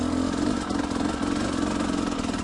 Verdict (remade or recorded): recorded